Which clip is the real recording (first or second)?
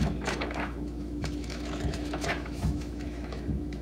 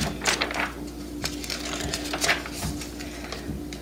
second